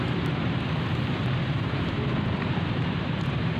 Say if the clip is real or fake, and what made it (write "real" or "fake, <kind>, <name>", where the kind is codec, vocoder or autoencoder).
fake, vocoder, BigVGAN v2